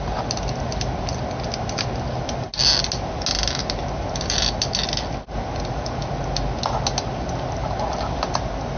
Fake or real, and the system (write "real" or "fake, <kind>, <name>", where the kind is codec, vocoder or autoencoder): real